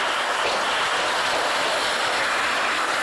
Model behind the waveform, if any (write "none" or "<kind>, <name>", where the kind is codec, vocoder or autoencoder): none